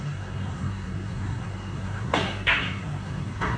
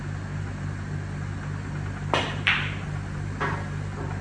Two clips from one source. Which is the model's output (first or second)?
first